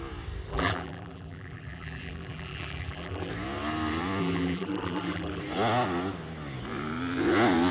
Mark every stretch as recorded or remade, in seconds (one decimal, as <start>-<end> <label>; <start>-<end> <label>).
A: 0.0-0.5 recorded; 0.5-3.3 remade; 3.3-4.2 recorded; 4.2-5.4 remade; 5.4-7.7 recorded